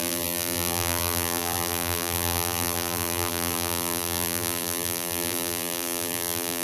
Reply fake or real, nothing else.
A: fake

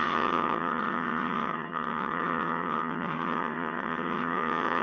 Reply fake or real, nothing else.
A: fake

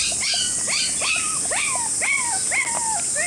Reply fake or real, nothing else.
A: real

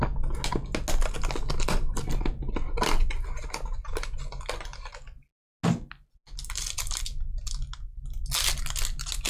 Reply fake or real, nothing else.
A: real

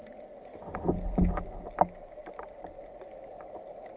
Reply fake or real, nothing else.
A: real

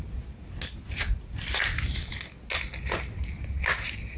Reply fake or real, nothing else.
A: real